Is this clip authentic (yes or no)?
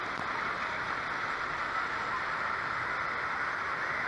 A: yes